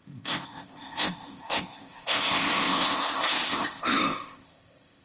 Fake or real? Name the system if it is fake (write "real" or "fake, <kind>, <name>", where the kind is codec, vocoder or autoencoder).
fake, codec, ZipCodec